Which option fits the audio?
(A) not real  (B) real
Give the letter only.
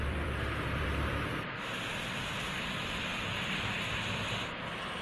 A